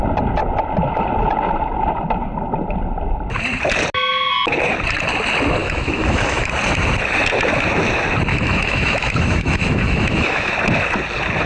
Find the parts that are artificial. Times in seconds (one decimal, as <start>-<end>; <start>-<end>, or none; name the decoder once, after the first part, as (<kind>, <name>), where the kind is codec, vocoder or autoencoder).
5.6-6.5 (autoencoder, DAC-VAE); 8.3-10.5